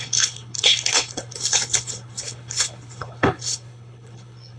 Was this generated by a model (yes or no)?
yes